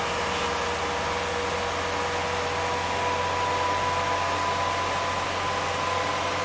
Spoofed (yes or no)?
no